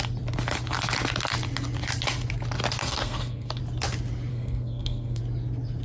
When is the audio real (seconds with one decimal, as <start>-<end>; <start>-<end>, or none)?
0.0-2.8; 3.6-4.3; 5.2-5.8

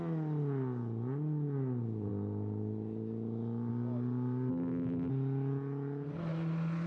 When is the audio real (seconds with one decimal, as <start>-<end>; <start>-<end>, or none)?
0.0-4.5; 5.1-6.9

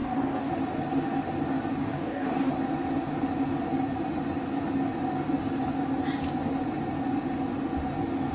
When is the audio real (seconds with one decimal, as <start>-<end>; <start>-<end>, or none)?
0.5-1.8; 2.5-8.3

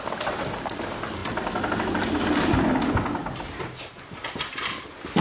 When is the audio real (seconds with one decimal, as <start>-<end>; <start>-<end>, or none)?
0.0-5.2

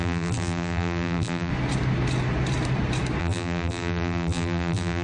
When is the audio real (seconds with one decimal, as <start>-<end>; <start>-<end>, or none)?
1.5-3.2

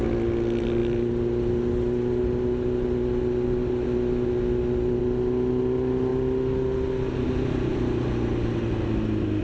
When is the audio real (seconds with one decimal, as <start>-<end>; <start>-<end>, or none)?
0.0-9.4

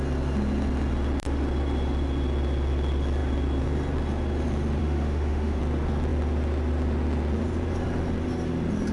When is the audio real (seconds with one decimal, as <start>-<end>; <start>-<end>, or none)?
0.0-4.8; 5.6-8.9